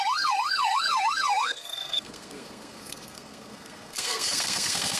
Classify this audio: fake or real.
fake